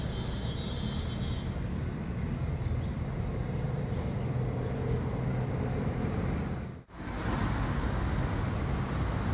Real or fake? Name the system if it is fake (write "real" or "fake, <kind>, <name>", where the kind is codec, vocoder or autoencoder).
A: real